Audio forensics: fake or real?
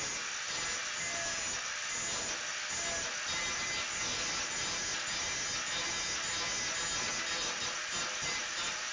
real